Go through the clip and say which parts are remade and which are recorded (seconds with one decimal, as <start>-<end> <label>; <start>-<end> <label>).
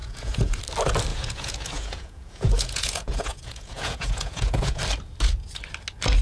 0.0-0.6 remade; 0.6-1.1 recorded; 1.1-4.8 remade; 4.8-6.2 recorded